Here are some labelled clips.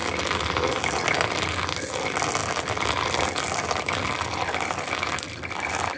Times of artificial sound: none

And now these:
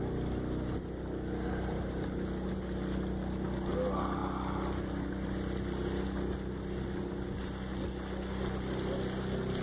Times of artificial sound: none

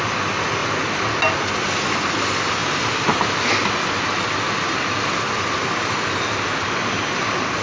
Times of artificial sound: none